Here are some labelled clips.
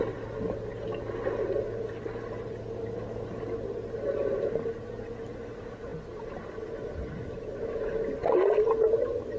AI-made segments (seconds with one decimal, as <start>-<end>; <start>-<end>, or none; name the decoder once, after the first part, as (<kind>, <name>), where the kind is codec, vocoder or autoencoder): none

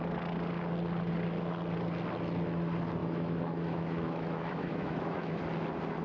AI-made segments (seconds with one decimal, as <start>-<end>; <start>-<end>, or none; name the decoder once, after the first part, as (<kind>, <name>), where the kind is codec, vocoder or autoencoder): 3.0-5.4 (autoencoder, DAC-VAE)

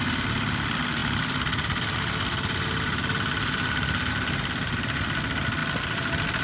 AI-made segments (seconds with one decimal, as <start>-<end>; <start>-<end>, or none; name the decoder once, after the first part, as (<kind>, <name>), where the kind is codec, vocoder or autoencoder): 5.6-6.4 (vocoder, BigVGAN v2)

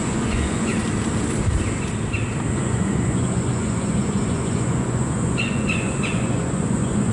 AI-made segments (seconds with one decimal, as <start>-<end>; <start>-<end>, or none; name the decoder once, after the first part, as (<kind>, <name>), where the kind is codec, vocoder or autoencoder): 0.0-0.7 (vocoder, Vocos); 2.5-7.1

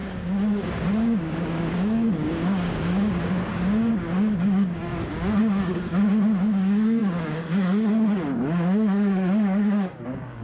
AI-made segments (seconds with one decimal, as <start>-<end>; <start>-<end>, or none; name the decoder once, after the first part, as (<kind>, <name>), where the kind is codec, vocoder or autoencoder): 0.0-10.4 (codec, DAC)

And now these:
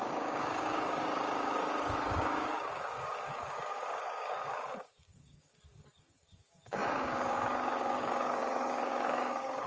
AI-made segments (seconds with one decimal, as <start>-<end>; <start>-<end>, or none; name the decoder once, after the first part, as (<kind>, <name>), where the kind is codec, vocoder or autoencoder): 0.0-9.7 (codec, DAC)

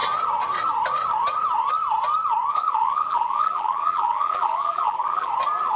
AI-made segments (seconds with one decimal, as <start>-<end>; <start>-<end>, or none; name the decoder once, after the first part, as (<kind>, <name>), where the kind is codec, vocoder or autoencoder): 2.5-5.3 (vocoder, BigVGAN v2)